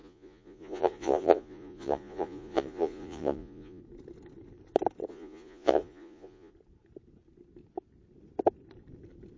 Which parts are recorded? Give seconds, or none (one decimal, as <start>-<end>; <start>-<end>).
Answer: 3.8-5.1; 6.5-9.4